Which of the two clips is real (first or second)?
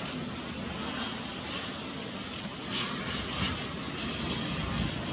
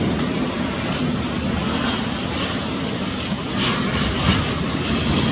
first